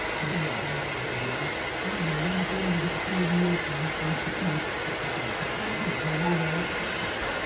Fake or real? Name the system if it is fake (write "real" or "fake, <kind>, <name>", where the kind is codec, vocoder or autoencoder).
real